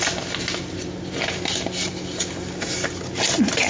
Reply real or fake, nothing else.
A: real